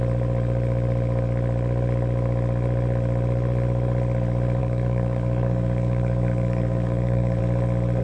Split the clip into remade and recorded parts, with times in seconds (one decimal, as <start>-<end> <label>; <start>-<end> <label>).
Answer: 0.0-4.6 recorded; 4.6-7.4 remade; 7.4-8.0 recorded